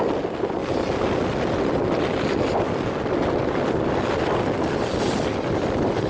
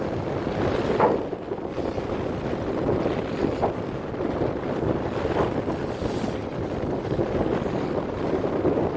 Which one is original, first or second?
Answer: first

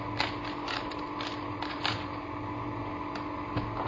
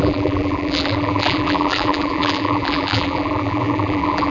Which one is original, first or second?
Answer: first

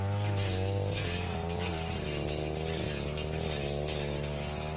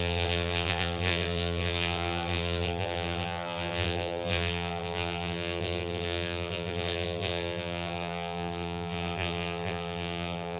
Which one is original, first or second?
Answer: first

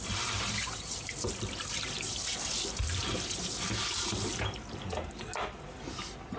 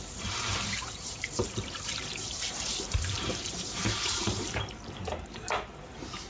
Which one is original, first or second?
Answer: first